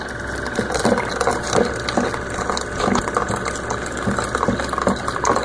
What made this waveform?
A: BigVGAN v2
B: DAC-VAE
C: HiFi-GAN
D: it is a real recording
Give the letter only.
D